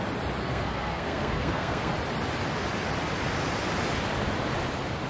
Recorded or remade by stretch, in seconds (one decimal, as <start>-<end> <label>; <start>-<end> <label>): 0.0-0.4 recorded; 0.4-1.9 remade; 1.9-5.1 recorded